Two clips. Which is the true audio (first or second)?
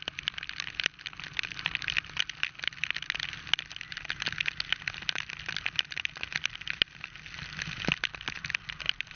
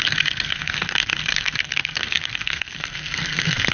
first